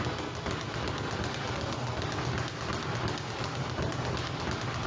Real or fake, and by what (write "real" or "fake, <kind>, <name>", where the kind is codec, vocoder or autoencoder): real